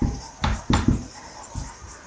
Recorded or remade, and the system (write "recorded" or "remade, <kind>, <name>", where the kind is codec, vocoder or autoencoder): remade, vocoder, BigVGAN v2